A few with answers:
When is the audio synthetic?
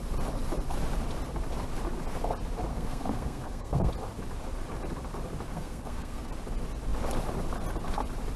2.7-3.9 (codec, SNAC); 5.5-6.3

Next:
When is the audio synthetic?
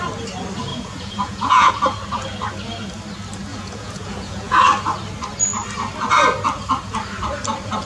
0.7-1.7 (vocoder, Vocos); 3.5-4.6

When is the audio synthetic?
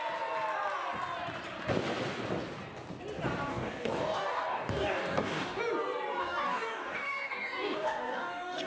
3.5-5.6 (codec, DAC); 6.2-8.7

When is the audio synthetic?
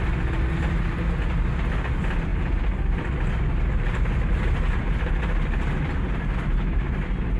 none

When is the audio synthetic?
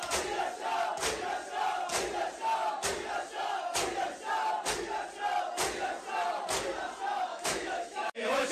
7.3-8.5 (autoencoder, DAC-VAE)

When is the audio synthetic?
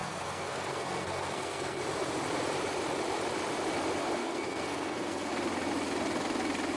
0.0-1.8 (codec, SNAC); 4.2-5.3